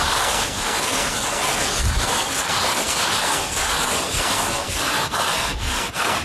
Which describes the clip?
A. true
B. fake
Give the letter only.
B